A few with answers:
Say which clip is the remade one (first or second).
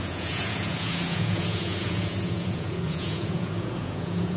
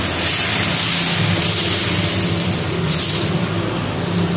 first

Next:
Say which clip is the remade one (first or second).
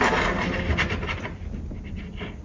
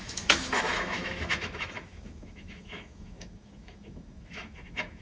second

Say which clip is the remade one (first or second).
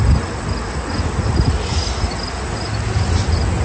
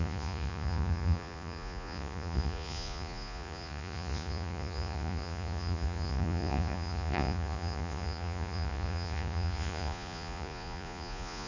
second